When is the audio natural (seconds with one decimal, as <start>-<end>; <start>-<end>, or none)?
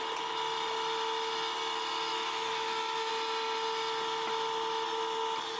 0.0-2.1; 3.1-5.6